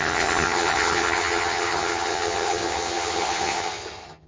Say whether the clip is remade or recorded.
remade